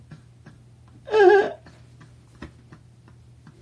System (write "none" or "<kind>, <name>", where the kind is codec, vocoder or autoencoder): none